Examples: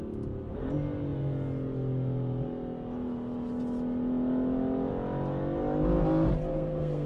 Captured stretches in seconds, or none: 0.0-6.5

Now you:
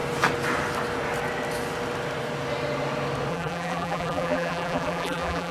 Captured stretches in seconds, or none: 0.0-3.3

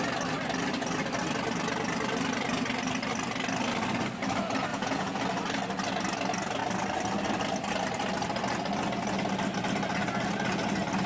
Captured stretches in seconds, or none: 0.0-4.7; 5.2-11.1